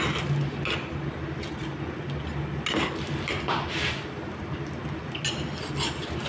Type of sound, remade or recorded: recorded